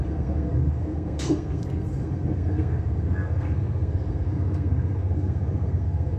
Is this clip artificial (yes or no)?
yes